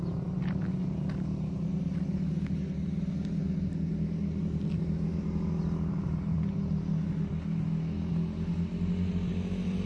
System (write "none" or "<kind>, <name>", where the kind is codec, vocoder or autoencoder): none